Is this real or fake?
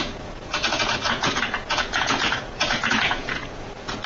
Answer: fake